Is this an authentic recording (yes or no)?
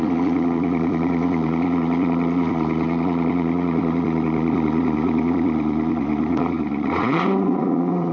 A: no